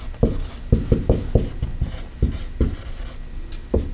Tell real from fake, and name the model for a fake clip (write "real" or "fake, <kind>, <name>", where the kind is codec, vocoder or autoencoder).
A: real